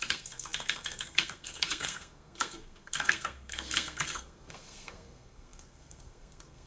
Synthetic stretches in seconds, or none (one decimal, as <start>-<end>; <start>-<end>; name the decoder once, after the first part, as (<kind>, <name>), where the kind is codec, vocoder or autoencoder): 0.0-6.7 (codec, SNAC)